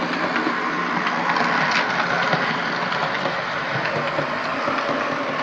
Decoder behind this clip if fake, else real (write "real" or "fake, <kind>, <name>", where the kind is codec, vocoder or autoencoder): real